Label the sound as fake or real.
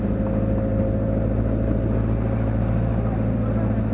real